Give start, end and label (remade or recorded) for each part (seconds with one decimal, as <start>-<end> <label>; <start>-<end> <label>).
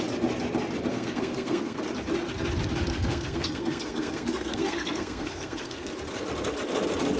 0.0-0.9 recorded; 0.9-1.8 remade; 1.8-2.9 recorded; 2.9-5.9 remade; 5.9-7.2 recorded